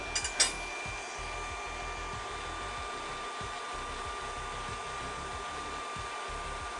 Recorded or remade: recorded